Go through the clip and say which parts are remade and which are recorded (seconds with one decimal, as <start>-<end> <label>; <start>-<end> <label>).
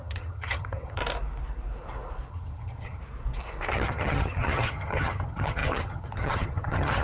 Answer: 0.0-1.0 remade; 1.0-2.3 recorded; 2.3-3.0 remade; 3.0-3.7 recorded; 3.7-7.0 remade